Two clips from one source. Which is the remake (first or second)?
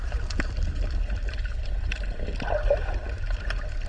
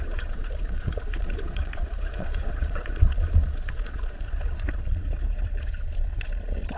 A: second